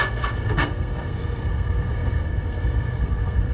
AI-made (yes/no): yes